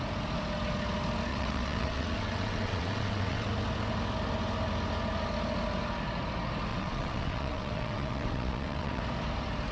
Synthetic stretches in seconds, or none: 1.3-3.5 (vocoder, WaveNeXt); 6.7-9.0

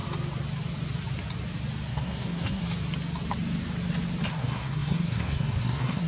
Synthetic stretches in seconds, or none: 1.9-2.6 (codec, SNAC); 4.3-6.1

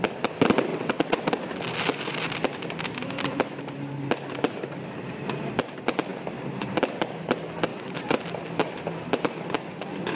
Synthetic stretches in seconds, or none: 0.7-1.3 (vocoder, WaveNeXt); 7.7-8.2

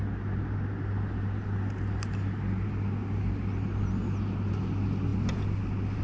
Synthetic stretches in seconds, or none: none

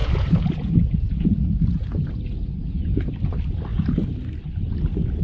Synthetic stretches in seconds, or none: 0.0-3.1 (vocoder, Vocos)

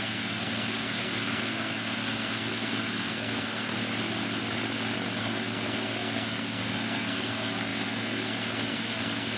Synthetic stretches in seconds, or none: 0.0-3.7 (codec, SNAC); 5.2-9.4

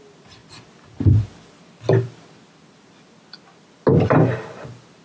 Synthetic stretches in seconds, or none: none

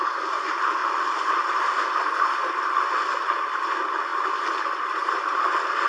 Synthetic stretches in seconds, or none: none